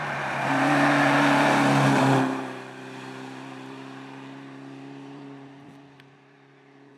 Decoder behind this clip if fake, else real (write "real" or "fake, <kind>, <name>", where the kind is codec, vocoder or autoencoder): fake, vocoder, BigVGAN v2